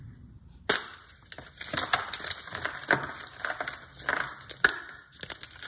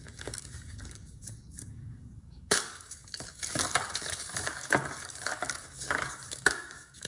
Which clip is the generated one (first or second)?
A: second